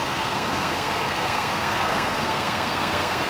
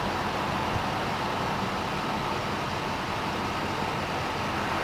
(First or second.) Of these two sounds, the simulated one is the first